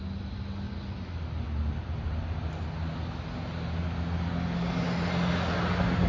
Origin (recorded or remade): recorded